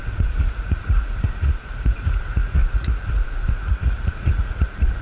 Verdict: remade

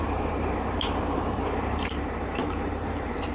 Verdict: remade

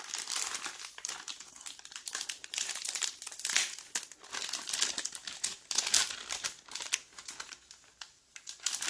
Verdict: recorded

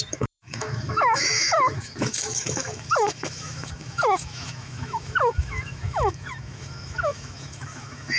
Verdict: remade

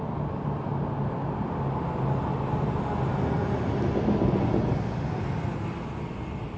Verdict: recorded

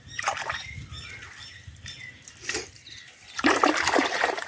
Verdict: recorded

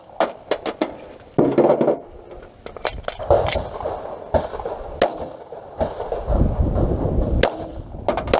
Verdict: recorded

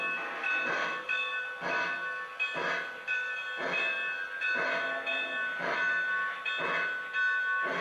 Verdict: recorded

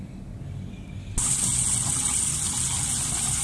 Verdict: recorded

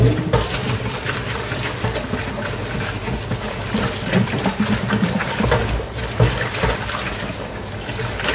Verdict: recorded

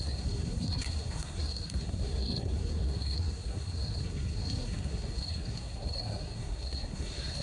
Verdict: remade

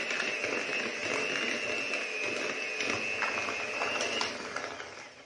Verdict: recorded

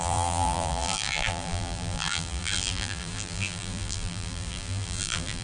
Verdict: remade